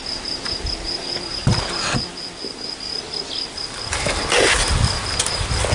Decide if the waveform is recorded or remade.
recorded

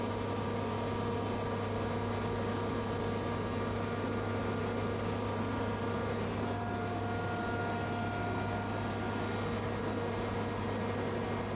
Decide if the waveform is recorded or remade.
recorded